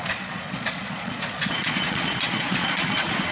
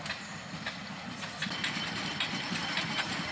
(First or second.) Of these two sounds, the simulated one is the first